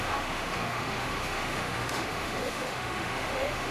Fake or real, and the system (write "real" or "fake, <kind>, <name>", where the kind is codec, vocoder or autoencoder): fake, autoencoder, DAC-VAE